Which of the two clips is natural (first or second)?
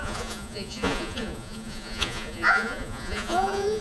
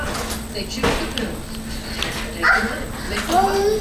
second